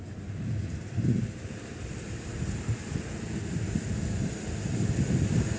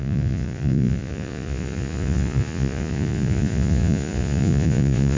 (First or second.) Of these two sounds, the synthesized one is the second